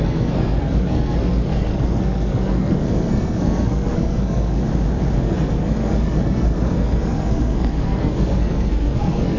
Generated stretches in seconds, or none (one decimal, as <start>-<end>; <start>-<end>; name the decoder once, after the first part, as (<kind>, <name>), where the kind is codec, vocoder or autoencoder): 0.0-4.7 (codec, SNAC); 5.2-9.4